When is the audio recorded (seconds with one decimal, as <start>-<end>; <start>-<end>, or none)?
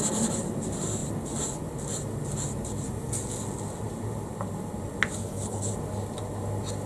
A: 0.0-5.2; 5.7-6.9